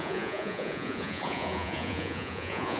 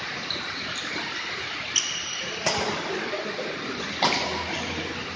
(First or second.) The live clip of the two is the second